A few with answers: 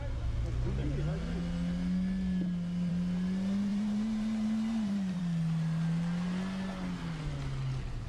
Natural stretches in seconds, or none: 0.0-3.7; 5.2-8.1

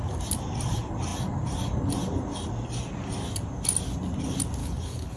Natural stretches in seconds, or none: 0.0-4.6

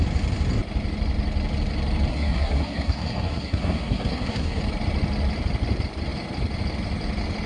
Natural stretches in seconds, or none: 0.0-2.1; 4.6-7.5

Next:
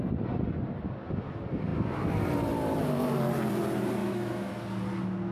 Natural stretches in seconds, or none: 0.0-4.0; 4.5-5.3